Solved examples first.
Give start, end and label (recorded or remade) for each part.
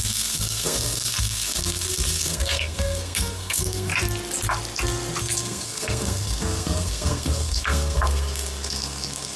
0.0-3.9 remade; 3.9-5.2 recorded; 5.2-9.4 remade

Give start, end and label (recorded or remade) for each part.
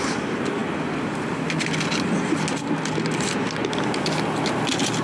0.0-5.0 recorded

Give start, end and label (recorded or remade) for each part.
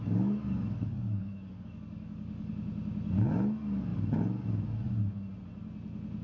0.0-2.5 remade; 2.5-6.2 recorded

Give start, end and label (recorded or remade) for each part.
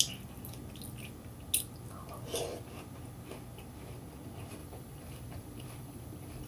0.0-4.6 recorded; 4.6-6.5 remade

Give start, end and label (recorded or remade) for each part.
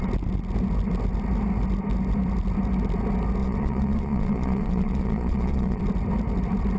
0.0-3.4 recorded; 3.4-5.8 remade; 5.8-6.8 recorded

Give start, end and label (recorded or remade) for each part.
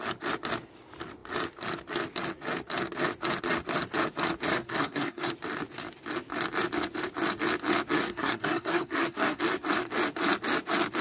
0.0-4.5 recorded; 4.5-5.3 remade; 5.3-8.0 recorded; 8.0-9.4 remade; 9.4-11.0 recorded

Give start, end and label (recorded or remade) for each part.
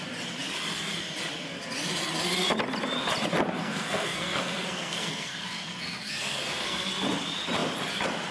0.0-3.6 recorded; 3.6-6.9 remade; 6.9-8.3 recorded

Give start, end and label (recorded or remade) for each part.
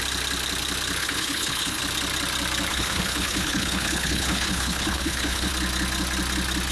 0.0-1.0 recorded; 1.0-1.8 remade; 1.8-2.7 recorded; 2.7-5.5 remade; 5.5-6.7 recorded